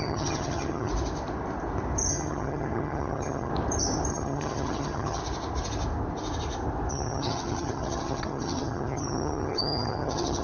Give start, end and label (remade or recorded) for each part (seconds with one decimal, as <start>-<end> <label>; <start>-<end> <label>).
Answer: 0.0-0.9 remade; 0.9-2.1 recorded; 2.1-3.5 remade; 3.5-4.1 recorded; 4.1-5.2 remade; 5.2-6.9 recorded; 6.9-10.4 remade